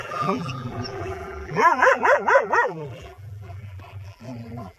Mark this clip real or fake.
fake